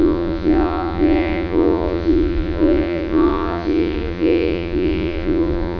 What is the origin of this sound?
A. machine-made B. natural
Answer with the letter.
A